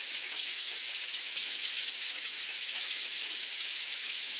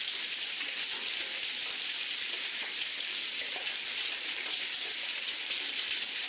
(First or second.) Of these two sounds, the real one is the second